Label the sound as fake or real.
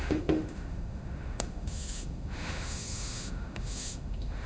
fake